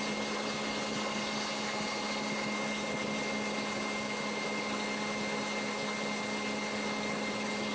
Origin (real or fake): real